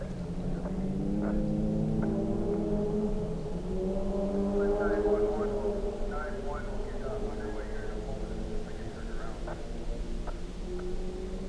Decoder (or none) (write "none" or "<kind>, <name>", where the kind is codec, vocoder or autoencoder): none